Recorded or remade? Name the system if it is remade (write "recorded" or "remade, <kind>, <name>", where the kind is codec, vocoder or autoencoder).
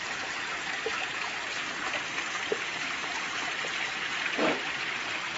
remade, vocoder, BigVGAN v2